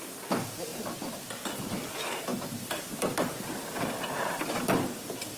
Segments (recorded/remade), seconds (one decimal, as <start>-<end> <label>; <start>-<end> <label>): 0.0-5.4 recorded